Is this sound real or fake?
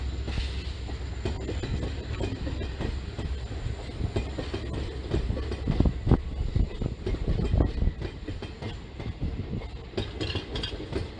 real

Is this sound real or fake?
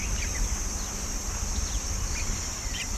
real